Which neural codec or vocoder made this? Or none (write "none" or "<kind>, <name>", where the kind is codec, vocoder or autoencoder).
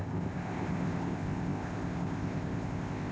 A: codec, ZipCodec